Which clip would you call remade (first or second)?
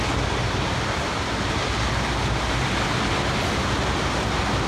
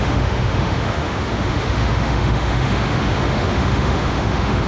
second